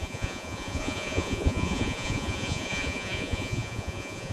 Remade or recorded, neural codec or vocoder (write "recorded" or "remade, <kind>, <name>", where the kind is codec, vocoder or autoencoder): remade, vocoder, Vocos